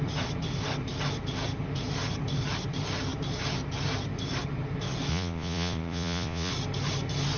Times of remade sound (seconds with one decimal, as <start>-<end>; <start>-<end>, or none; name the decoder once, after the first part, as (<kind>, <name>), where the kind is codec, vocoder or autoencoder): 5.1-6.5 (vocoder, Vocos)